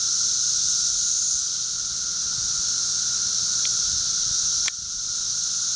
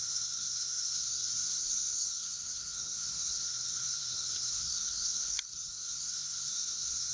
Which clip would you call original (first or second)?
first